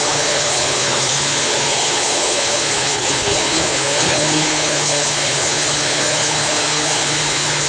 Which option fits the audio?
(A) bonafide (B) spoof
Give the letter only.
B